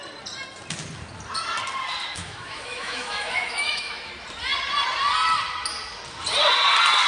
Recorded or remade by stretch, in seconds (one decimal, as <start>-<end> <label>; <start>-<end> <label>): 0.0-2.2 recorded; 2.2-4.1 remade; 4.1-7.1 recorded